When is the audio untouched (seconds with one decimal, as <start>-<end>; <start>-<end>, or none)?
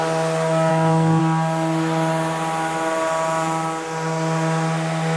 0.0-0.7; 1.2-5.2